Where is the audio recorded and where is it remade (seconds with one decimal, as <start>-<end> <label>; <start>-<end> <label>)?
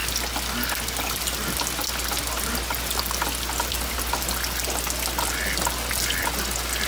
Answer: 0.0-6.9 recorded